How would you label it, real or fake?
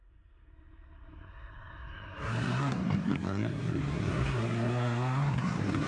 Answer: fake